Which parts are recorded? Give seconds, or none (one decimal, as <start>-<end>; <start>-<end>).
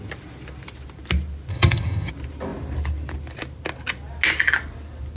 0.0-1.5; 2.1-5.2